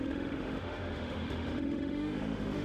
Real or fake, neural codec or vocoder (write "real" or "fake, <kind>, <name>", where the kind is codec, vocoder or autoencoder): fake, autoencoder, DAC-VAE